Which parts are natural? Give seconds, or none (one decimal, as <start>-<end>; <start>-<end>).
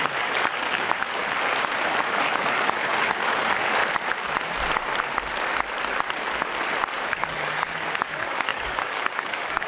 1.2-2.0; 3.8-7.1